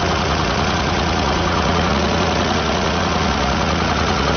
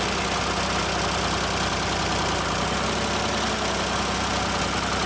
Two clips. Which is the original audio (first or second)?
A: second